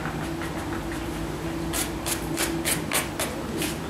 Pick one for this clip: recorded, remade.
recorded